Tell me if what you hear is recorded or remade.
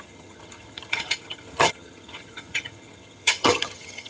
remade